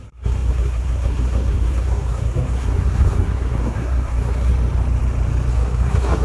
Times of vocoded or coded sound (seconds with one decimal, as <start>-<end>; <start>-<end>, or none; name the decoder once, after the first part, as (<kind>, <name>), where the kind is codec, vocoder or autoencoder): 0.0-4.5 (codec, SNAC); 5.5-6.2